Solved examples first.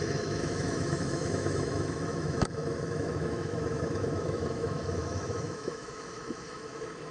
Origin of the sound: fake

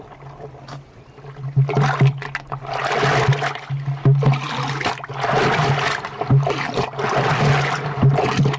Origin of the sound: real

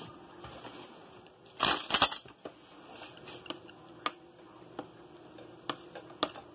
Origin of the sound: real